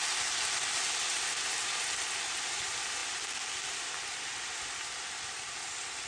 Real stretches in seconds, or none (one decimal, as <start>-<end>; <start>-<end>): 0.0-6.1